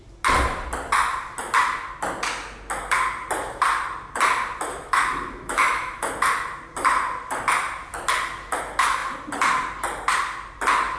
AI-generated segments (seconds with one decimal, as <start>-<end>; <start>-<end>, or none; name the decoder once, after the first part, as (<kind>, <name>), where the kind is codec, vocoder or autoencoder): 4.7-6.1 (autoencoder, DAC-VAE)